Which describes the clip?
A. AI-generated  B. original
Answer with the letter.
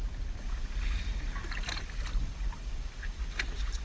B